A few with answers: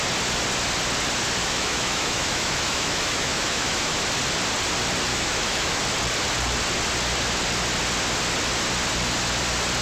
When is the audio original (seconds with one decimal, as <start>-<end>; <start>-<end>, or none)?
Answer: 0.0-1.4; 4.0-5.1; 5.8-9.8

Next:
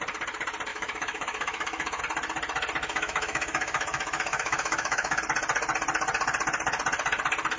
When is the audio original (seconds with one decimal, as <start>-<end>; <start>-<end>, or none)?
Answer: 0.0-0.7; 2.0-2.8; 5.2-7.6

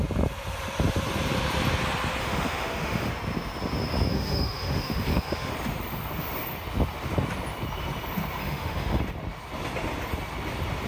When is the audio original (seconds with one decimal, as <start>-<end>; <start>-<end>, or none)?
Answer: 0.0-2.2; 3.1-4.1; 5.5-8.4; 9.0-10.9